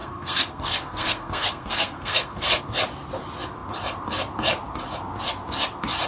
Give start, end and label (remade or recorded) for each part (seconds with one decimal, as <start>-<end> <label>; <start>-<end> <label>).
0.0-2.6 remade; 2.6-6.1 recorded